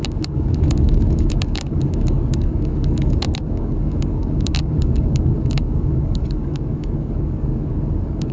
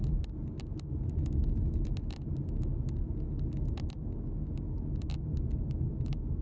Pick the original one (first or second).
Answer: second